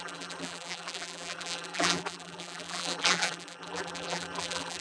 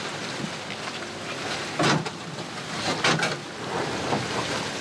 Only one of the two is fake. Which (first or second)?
first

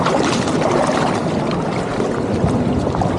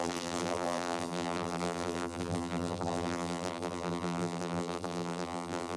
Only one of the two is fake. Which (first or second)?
second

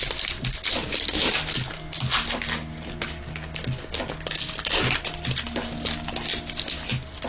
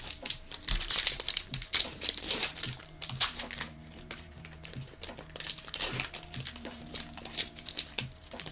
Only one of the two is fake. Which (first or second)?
second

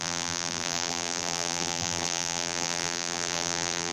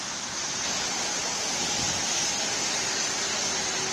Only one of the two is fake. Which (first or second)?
first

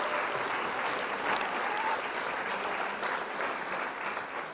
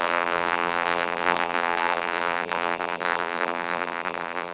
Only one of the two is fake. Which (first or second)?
second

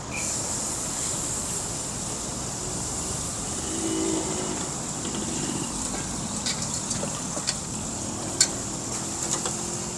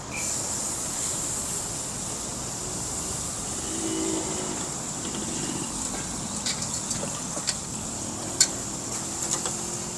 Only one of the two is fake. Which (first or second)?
first